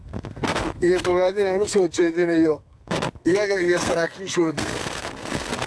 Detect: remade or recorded remade